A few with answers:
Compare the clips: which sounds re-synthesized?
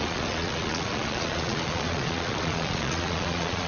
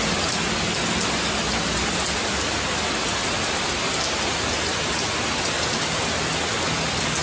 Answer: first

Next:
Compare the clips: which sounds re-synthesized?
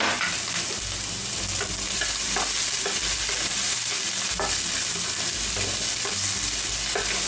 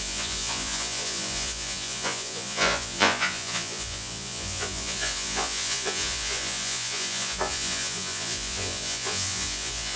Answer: second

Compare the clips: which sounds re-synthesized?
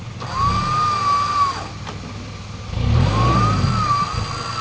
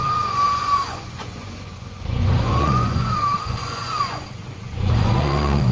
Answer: second